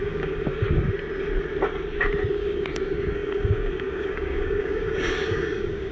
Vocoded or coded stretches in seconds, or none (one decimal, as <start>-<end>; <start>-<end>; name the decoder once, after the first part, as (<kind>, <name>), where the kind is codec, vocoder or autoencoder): 0.0-0.6 (codec, DAC); 2.3-5.9